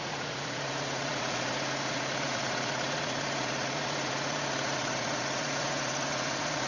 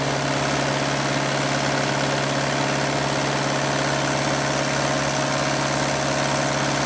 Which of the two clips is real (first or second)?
second